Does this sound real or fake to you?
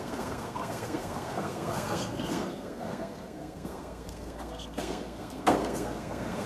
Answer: fake